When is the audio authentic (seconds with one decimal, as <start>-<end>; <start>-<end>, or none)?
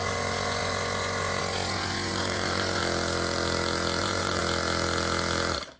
2.8-4.0; 4.4-5.8